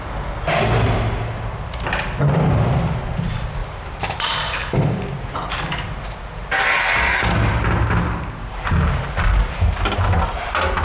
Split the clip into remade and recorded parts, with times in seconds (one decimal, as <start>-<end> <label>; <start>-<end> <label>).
0.0-3.6 recorded; 3.6-5.6 remade; 5.6-10.8 recorded